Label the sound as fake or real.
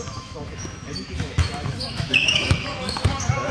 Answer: fake